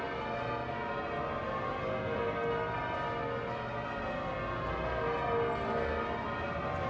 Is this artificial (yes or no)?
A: no